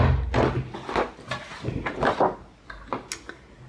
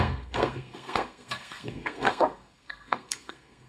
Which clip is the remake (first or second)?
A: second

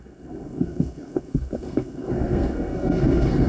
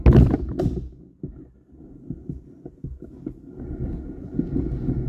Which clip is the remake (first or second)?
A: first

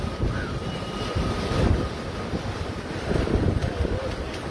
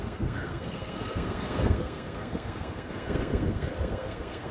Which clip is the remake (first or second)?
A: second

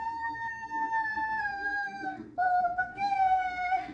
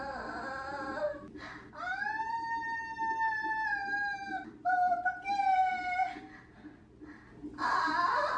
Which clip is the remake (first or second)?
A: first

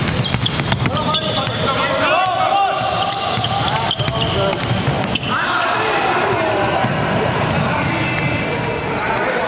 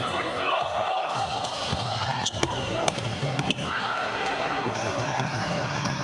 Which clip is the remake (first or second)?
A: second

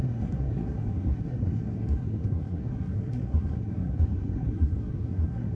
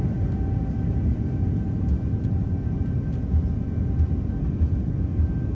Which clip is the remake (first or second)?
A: first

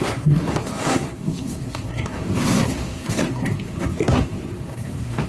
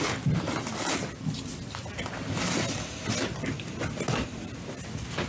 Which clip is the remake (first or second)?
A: first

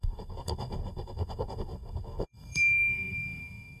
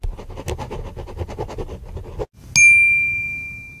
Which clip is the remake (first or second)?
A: first